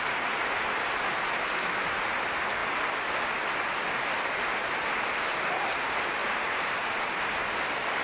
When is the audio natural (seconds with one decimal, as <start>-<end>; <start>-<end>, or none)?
0.0-6.2; 7.0-8.0

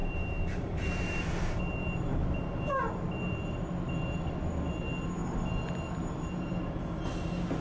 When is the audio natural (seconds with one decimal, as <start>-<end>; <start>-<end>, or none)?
1.6-7.6